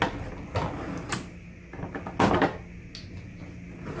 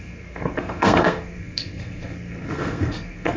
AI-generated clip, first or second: second